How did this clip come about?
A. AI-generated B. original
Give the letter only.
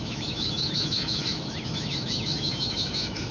A